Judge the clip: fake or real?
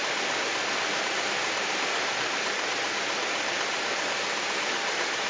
real